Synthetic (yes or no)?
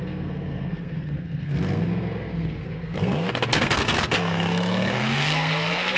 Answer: yes